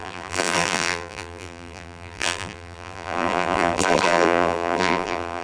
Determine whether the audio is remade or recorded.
remade